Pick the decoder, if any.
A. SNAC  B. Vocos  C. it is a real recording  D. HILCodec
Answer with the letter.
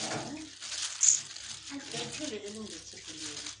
C